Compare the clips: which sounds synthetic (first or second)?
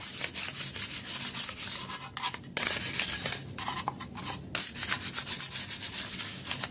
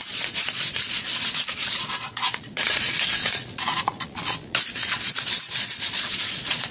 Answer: second